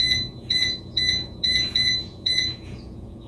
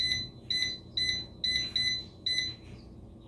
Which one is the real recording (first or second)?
second